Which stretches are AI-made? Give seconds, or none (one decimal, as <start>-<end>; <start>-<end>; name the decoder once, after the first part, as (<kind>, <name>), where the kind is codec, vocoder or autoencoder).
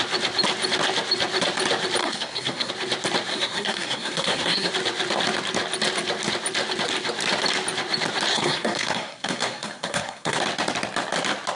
2.0-2.7 (codec, SNAC); 3.3-4.7; 8.3-10.4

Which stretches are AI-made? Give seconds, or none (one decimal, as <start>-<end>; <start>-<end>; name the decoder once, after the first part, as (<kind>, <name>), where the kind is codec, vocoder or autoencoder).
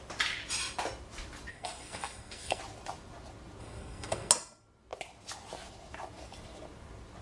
1.5-2.6 (codec, SNAC); 3.6-4.3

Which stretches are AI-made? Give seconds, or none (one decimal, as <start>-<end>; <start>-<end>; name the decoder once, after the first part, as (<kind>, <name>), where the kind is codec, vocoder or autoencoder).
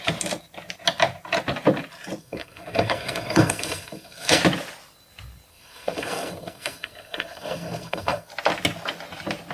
2.2-4.4 (codec, SNAC); 5.5-8.3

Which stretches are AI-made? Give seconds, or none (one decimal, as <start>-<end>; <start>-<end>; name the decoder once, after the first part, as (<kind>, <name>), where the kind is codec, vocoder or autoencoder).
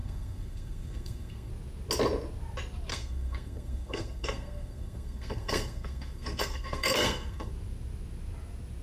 0.0-1.5 (codec, SNAC); 2.9-7.5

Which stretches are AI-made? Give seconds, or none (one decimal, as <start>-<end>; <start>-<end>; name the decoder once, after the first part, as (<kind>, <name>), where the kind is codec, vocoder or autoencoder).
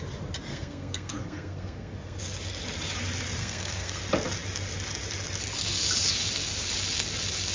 0.5-2.2 (codec, SNAC); 3.4-4.0